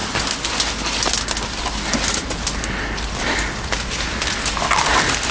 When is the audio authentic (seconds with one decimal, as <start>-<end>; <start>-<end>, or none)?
0.0-5.3